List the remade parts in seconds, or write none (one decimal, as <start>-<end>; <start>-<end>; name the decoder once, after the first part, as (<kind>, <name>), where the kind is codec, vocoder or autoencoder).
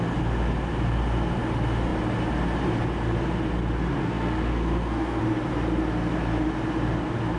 4.0-5.2 (codec, SNAC)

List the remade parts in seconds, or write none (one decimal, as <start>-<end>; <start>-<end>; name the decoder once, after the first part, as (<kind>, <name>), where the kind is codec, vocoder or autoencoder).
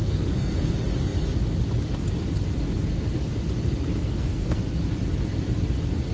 0.0-0.7 (codec, SNAC); 3.9-4.6